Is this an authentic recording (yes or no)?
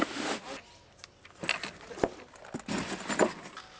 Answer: yes